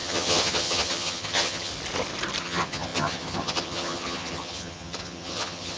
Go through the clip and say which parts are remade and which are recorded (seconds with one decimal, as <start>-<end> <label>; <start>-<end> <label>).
0.0-1.7 remade; 1.7-2.4 recorded; 2.4-5.8 remade